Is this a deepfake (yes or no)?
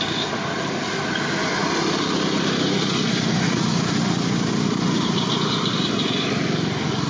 no